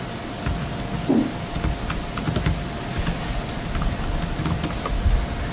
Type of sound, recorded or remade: recorded